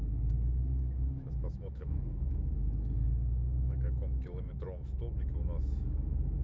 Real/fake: fake